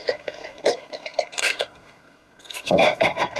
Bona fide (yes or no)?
no